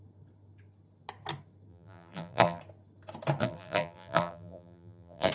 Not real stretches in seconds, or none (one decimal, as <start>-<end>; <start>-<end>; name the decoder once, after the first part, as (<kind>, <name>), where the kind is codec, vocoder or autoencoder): 1.7-2.6 (vocoder, BigVGAN v2); 3.4-5.3